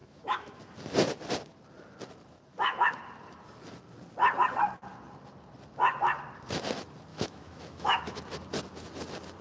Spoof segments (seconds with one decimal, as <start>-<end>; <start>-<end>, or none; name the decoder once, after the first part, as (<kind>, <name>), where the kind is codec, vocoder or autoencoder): 0.0-0.6 (autoencoder, DAC-VAE); 7.1-8.2